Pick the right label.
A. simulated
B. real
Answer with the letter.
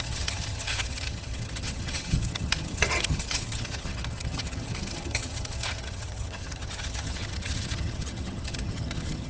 A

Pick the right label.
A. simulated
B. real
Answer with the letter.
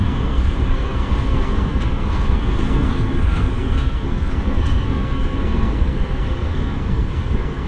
A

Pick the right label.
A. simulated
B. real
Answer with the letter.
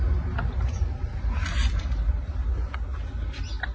B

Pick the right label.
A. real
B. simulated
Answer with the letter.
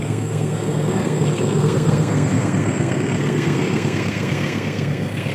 B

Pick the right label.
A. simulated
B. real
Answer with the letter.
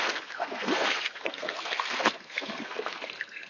A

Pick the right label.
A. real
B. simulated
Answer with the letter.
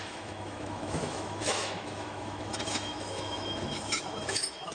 B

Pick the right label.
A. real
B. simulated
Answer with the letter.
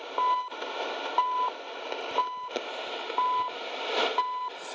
A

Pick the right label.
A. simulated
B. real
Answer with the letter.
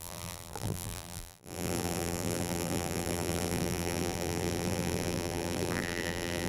A